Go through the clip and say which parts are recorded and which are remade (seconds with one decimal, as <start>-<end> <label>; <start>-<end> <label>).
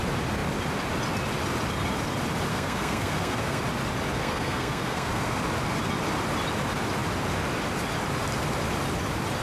0.0-2.5 recorded; 2.5-3.6 remade; 3.6-4.2 recorded; 4.2-5.4 remade; 5.4-9.4 recorded